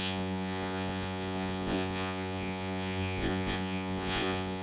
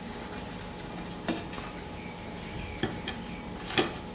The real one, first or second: second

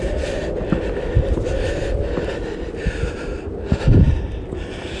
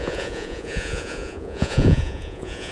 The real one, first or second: first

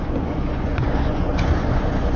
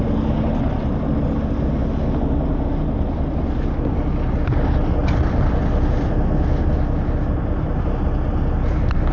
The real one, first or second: second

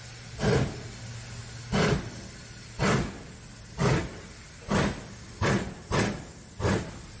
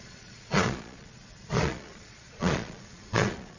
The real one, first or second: first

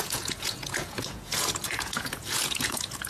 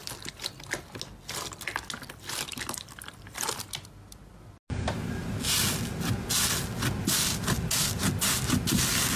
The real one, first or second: second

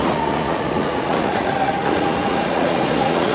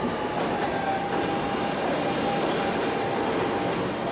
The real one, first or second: second